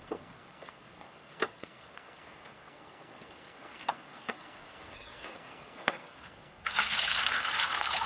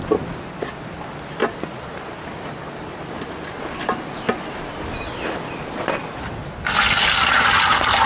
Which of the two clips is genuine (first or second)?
second